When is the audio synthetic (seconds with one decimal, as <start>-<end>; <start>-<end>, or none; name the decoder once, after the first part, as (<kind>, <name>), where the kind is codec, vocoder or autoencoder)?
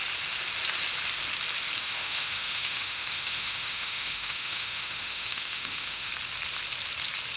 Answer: 1.8-6.1 (autoencoder, DAC-VAE)